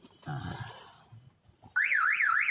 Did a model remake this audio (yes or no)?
no